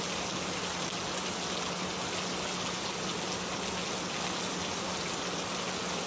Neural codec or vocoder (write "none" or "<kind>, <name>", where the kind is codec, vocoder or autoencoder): none